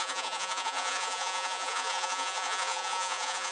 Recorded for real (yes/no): no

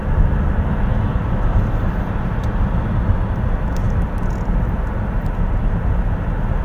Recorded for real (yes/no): yes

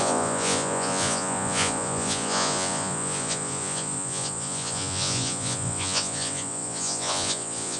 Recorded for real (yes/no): no